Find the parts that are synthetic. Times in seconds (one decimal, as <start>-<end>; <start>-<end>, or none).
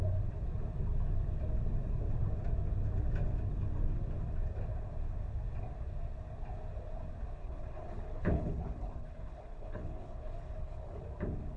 7.4-11.0